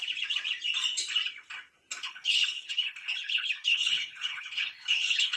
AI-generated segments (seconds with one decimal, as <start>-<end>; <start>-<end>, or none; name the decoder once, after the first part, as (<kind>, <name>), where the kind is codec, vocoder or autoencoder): 2.0-5.4 (codec, HILCodec)